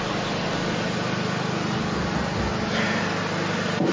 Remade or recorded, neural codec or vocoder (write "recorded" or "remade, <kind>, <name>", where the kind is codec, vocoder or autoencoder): recorded